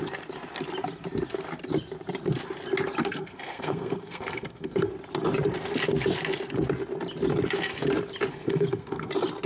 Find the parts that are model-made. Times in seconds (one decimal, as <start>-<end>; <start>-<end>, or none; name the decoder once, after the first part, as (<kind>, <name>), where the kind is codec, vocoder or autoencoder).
3.0-4.9 (codec, SNAC); 8.3-9.1